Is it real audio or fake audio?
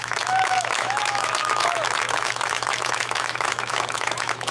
fake